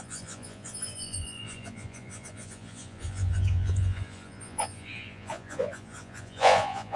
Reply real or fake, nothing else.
fake